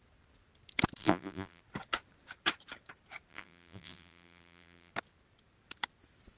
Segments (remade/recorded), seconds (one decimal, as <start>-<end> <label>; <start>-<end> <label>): 0.0-1.0 recorded; 1.0-1.6 remade; 1.6-3.3 recorded; 3.3-4.9 remade; 4.9-6.4 recorded